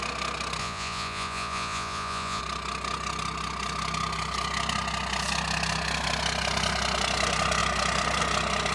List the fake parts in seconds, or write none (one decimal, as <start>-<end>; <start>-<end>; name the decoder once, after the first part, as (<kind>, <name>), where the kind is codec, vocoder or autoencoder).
0.6-2.4 (vocoder, Vocos)